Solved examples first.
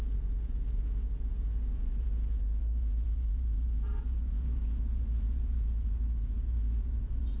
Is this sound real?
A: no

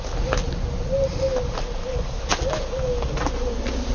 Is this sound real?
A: yes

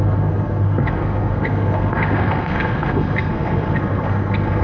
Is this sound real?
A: no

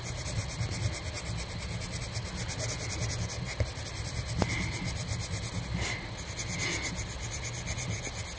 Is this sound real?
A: yes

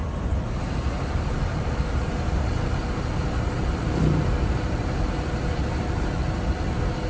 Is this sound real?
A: no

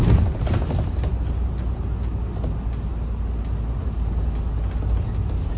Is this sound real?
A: yes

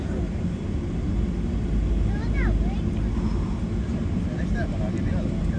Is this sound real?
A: yes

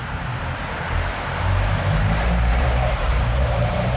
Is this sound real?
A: no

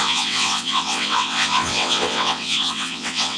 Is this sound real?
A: no